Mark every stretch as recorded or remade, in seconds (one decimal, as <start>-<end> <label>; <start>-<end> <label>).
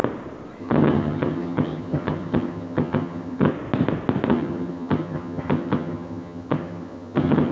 0.0-0.6 recorded; 0.6-3.5 remade; 3.5-4.3 recorded; 4.3-7.5 remade